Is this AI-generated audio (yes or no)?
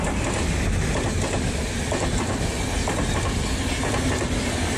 no